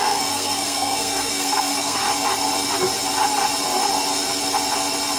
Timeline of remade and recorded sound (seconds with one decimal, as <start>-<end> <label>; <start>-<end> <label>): 0.0-2.0 remade; 2.0-5.2 recorded